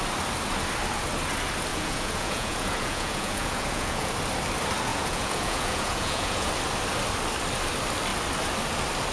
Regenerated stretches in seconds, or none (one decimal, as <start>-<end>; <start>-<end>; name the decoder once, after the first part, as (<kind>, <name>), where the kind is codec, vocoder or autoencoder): 1.7-4.1 (vocoder, Vocos); 4.9-6.5